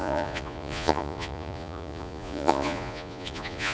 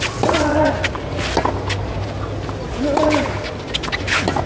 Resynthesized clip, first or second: first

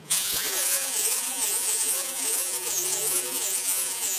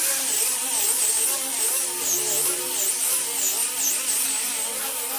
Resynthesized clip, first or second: first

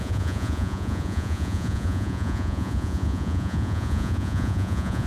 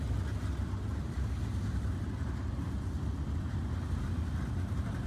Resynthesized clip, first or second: first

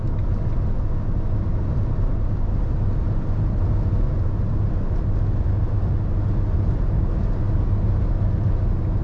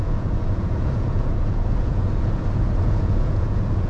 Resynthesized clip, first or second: second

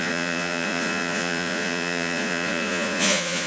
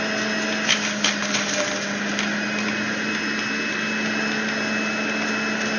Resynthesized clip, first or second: first